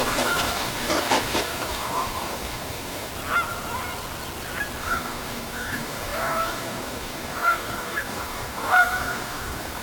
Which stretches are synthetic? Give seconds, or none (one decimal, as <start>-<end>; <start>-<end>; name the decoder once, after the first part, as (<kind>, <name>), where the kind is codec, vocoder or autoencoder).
0.0-3.1 (codec, DAC); 4.8-9.8